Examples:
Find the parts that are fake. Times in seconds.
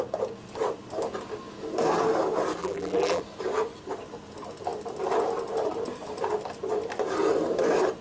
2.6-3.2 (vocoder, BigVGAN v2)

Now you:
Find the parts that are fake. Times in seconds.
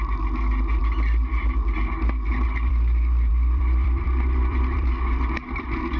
3.3-6.0 (vocoder, BigVGAN v2)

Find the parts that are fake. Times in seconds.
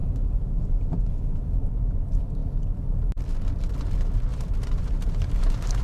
0.0-0.5 (vocoder, BigVGAN v2); 4.3-5.8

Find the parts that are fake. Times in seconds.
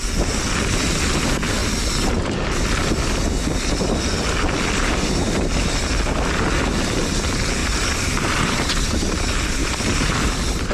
7.6-9.2 (vocoder, BigVGAN v2); 9.6-10.7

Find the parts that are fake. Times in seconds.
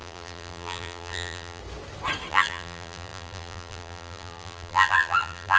0.0-1.6 (vocoder, BigVGAN v2); 2.3-5.6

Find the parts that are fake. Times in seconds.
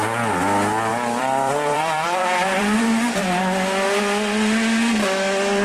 0.9-3.4 (vocoder, BigVGAN v2)